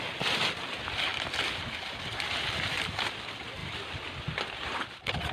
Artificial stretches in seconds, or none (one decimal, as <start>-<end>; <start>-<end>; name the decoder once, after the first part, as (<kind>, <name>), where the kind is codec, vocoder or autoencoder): 3.6-5.3 (vocoder, BigVGAN v2)